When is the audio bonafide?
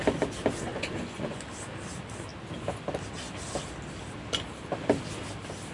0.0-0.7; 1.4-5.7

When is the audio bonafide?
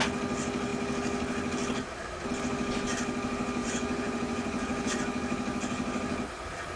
0.0-3.6; 5.0-6.8